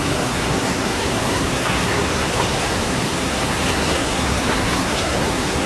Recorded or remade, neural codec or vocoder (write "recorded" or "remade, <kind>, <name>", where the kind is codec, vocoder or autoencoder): remade, codec, SNAC